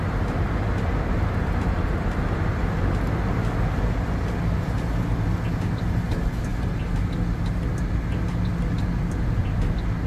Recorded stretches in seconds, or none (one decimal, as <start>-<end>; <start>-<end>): 0.0-10.1